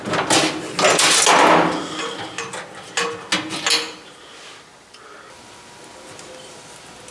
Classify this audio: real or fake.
real